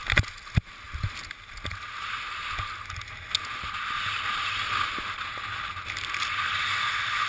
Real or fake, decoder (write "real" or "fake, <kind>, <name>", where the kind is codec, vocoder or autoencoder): real